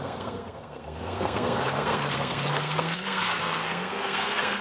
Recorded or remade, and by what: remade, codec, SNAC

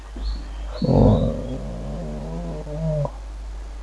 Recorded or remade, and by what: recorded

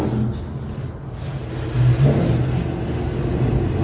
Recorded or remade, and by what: recorded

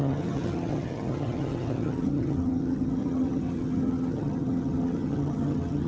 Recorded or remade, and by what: remade, vocoder, HiFi-GAN